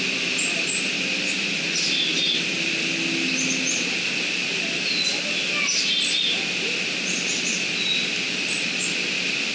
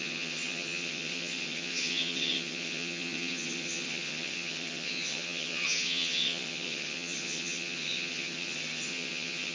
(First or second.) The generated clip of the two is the second